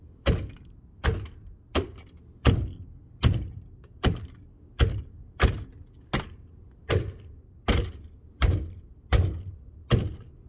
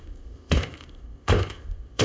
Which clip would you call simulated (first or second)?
second